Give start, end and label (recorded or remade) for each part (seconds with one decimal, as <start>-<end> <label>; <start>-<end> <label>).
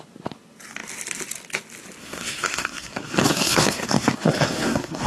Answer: 0.0-2.0 recorded; 2.0-5.1 remade